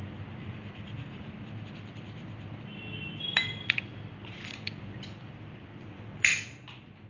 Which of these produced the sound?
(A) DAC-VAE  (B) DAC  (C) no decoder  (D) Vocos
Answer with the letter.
C